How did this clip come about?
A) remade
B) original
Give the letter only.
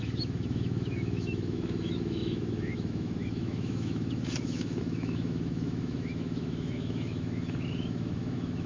A